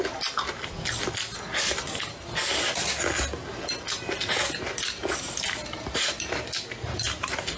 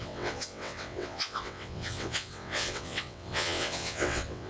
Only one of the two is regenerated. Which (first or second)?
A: second